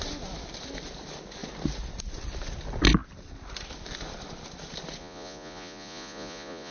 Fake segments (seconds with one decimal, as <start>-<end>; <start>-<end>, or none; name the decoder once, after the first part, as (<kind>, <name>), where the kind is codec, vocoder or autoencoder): 5.0-6.7 (vocoder, Vocos)